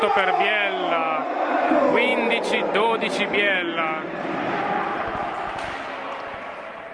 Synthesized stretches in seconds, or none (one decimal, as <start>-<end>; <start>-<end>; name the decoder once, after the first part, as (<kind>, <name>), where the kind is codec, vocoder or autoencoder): none